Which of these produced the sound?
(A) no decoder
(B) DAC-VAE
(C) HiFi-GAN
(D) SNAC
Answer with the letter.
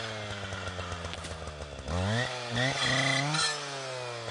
A